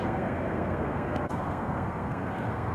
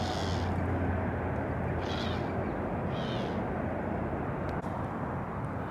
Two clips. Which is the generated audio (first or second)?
first